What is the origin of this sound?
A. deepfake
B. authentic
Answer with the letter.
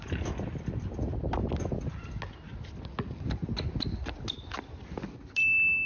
B